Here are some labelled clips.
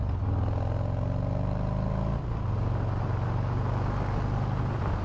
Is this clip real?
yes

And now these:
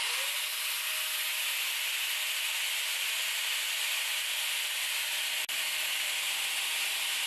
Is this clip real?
yes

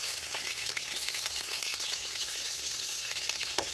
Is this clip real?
no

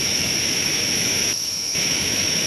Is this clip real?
no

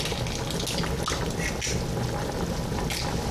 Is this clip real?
yes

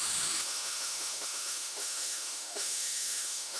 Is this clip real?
no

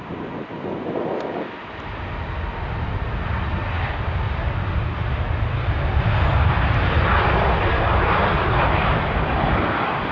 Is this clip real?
yes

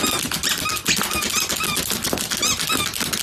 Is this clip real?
yes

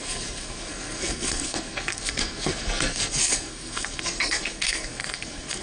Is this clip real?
no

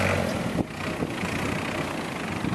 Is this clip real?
yes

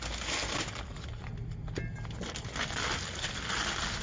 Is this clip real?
yes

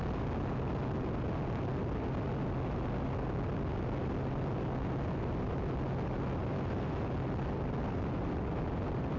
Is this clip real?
yes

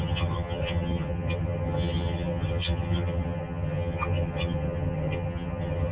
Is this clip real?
no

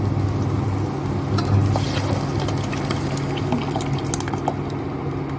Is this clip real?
yes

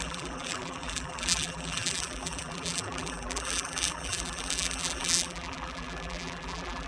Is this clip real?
no